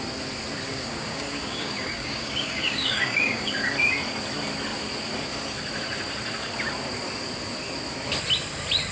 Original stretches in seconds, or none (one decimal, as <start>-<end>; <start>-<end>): 0.0-0.7; 3.6-8.9